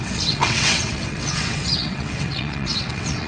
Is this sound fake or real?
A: fake